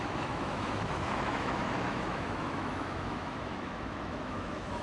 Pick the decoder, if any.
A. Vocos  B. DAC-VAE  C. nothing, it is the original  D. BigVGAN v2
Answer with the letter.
B